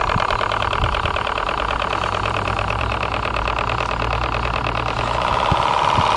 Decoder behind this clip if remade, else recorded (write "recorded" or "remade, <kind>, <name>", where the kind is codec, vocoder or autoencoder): remade, vocoder, BigVGAN v2